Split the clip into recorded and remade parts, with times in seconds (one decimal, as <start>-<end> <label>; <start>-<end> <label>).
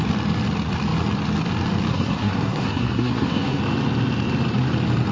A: 0.0-1.9 recorded; 1.9-3.6 remade; 3.6-5.1 recorded